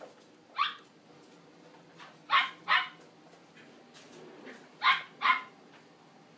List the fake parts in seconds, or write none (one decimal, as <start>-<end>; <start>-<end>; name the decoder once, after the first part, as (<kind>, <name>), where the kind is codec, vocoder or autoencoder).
none